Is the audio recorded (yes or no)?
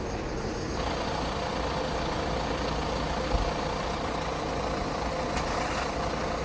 yes